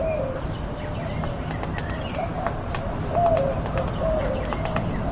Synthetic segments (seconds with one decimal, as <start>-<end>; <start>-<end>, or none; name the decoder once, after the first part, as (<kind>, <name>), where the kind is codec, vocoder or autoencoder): none